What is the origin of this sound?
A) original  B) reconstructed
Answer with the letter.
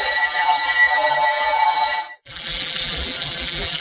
B